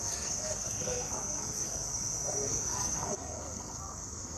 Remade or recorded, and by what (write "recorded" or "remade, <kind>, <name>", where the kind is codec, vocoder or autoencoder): remade, codec, SNAC